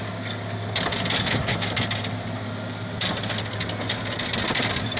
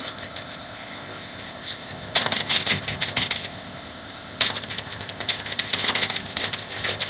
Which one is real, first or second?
first